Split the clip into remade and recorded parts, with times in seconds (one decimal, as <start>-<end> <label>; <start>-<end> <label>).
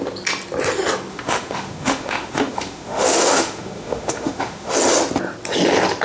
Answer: 0.0-1.1 recorded; 1.1-4.7 remade; 4.7-6.0 recorded